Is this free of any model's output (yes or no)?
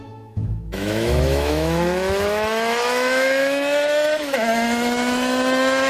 no